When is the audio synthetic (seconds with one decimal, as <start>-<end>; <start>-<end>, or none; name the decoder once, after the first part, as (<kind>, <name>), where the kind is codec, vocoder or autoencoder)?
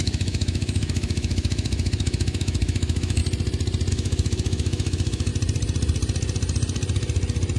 0.0-3.2 (autoencoder, DAC-VAE); 3.9-5.3